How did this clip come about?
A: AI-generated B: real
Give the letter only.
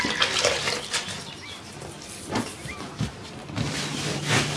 A